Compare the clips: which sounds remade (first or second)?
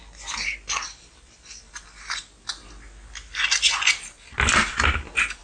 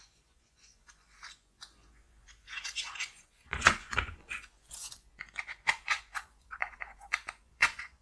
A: second